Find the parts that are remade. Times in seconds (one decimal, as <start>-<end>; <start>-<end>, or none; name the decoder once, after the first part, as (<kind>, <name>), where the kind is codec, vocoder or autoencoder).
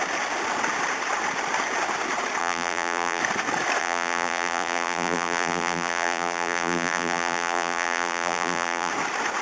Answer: 2.4-3.2 (vocoder, BigVGAN v2); 3.8-8.9